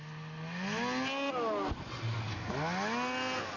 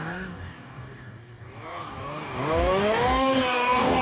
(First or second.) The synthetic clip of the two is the second